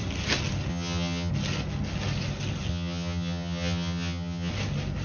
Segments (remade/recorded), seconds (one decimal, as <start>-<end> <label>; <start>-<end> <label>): 0.0-0.7 recorded; 0.7-1.3 remade; 1.3-2.7 recorded; 2.7-4.5 remade; 4.5-5.0 recorded